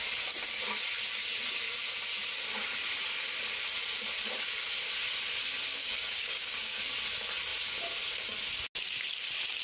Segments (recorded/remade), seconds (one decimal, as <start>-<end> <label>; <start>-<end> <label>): 0.0-5.8 recorded; 5.8-6.8 remade; 6.8-9.6 recorded